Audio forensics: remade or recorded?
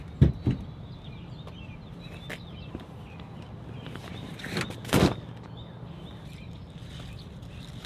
recorded